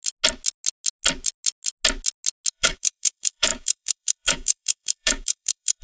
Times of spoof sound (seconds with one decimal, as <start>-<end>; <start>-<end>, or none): 2.5-5.8